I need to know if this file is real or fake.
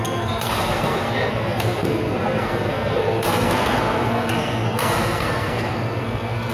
fake